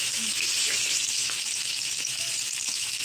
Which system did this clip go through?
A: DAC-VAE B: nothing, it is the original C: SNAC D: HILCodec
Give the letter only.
A